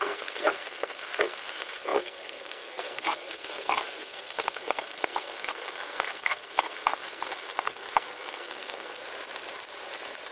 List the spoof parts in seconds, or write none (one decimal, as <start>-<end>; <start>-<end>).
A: 0.0-9.0